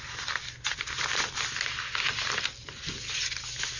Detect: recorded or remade recorded